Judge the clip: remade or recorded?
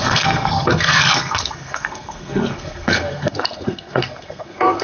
remade